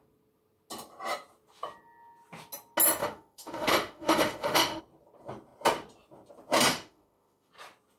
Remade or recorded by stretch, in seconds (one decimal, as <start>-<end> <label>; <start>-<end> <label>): 0.0-3.0 recorded; 3.0-4.8 remade; 4.8-6.7 recorded; 6.7-7.5 remade; 7.5-8.0 recorded